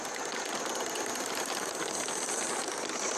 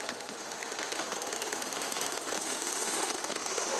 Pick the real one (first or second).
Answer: first